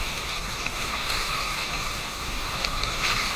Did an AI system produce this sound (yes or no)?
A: yes